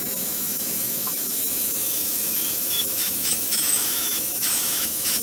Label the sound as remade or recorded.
remade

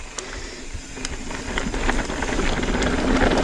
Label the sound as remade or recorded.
recorded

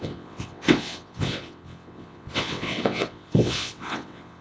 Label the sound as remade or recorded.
remade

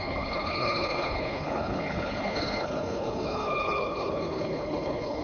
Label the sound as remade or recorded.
remade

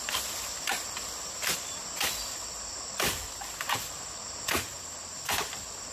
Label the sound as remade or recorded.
remade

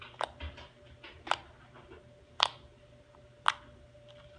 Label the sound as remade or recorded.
recorded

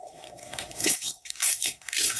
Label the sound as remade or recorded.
remade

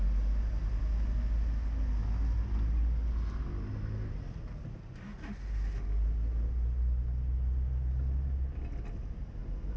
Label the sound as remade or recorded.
recorded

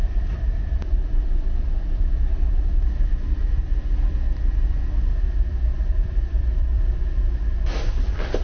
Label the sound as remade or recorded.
remade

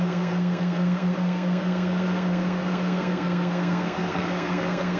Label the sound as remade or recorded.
remade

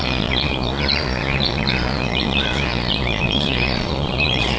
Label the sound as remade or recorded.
remade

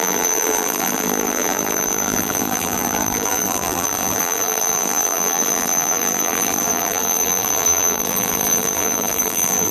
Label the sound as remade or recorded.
remade